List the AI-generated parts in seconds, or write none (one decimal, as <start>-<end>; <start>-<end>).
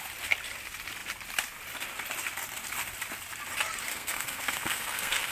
3.9-5.3